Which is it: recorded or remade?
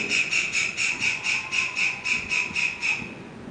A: remade